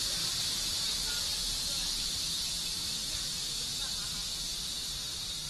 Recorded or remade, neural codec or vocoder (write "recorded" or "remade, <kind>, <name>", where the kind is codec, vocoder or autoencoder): recorded